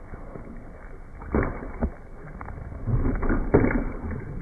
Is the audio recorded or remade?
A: recorded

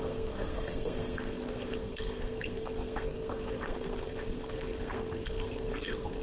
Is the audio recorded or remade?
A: remade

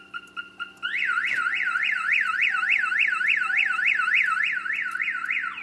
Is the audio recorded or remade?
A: recorded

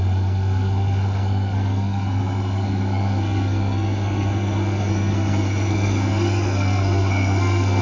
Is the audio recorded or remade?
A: remade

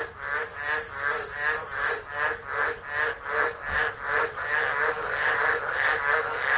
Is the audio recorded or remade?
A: recorded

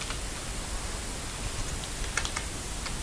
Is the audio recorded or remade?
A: recorded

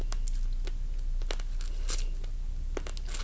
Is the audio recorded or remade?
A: recorded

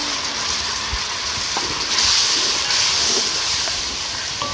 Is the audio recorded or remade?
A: recorded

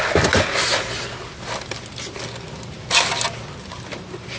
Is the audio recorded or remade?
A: recorded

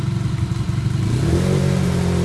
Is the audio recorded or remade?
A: recorded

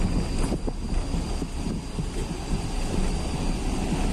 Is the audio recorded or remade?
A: recorded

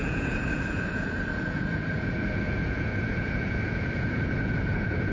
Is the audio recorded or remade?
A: remade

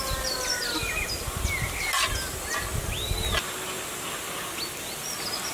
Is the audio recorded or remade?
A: recorded